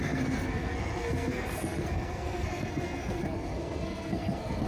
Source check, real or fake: fake